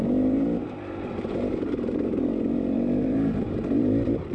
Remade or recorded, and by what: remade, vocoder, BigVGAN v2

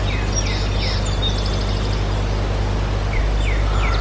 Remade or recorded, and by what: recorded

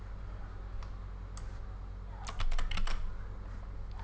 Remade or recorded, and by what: recorded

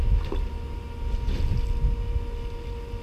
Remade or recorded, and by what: recorded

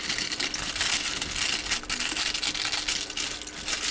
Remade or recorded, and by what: recorded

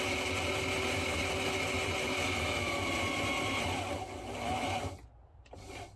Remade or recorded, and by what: recorded